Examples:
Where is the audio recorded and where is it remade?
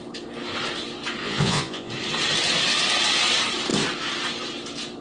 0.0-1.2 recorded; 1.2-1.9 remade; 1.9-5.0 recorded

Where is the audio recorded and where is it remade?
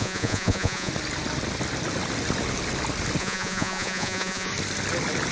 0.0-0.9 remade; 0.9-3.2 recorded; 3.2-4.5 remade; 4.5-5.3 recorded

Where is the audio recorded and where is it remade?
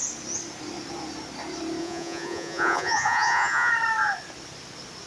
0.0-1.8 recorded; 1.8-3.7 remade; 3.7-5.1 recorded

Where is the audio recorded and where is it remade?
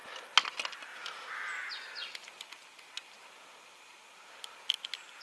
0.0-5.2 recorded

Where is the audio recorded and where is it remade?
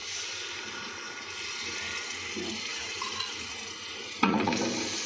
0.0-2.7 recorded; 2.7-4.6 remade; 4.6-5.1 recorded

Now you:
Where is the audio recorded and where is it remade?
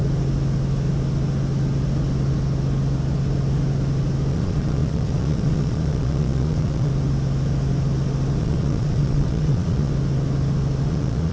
0.0-4.3 recorded; 4.3-6.9 remade; 6.9-8.4 recorded; 8.4-9.9 remade; 9.9-10.9 recorded; 10.9-11.3 remade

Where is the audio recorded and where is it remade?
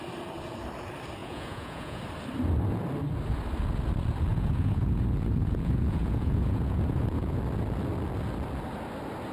0.0-1.2 recorded; 1.2-2.0 remade; 2.0-4.3 recorded; 4.3-7.4 remade; 7.4-9.3 recorded